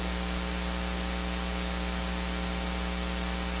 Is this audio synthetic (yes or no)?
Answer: no